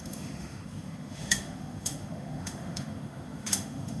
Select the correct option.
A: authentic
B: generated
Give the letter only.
B